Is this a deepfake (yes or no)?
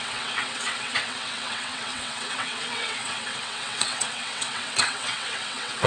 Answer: yes